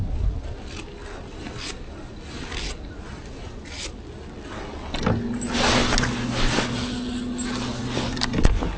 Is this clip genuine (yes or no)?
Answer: yes